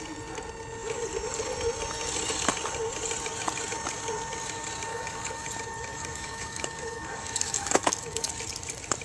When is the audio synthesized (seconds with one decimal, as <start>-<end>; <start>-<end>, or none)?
4.9-5.5; 5.9-8.3